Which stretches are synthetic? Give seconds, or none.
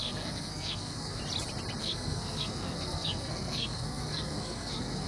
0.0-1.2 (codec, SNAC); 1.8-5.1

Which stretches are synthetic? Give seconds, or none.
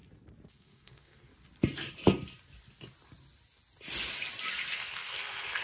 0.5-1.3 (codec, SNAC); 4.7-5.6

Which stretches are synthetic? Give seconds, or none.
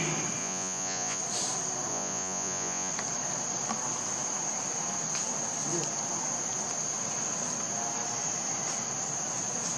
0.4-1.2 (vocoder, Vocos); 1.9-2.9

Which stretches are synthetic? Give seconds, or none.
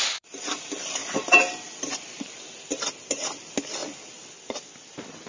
none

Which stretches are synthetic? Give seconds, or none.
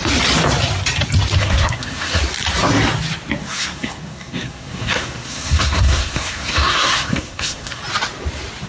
1.4-2.2 (codec, SNAC); 3.4-7.8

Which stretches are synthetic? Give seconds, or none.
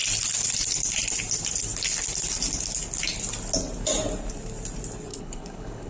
5.1-5.9 (codec, HILCodec)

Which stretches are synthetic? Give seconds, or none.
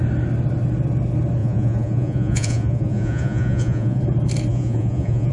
1.4-4.0 (vocoder, Vocos); 4.5-5.3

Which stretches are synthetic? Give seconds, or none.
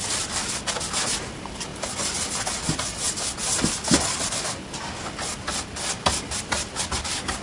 none